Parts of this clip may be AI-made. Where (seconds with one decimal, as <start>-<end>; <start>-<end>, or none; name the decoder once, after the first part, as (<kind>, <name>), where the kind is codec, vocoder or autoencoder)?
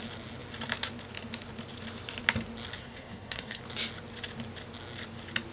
2.8-3.6 (codec, SNAC)